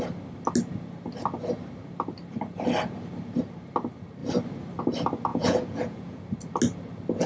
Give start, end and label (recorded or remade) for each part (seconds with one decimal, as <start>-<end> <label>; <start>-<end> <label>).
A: 0.0-5.3 recorded; 5.3-6.2 remade; 6.2-7.3 recorded

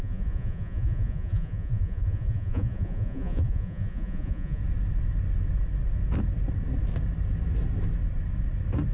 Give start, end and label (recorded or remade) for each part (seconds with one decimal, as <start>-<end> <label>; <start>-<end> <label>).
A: 0.0-4.6 remade; 4.6-8.9 recorded